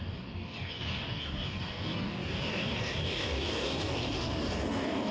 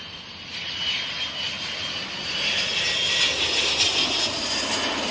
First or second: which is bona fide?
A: second